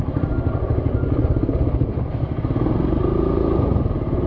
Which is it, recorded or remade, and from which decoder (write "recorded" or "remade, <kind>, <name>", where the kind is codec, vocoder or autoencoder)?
recorded